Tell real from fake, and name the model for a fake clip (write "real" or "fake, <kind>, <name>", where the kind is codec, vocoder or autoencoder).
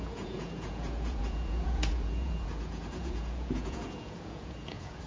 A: fake, vocoder, Vocos